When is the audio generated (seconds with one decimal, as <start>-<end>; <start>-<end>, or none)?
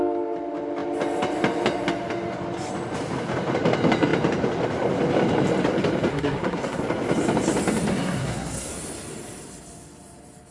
6.1-6.8; 7.9-8.7